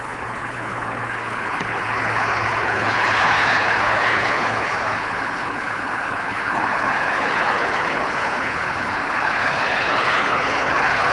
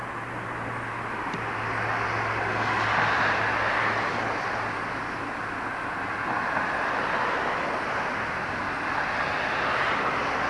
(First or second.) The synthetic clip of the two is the first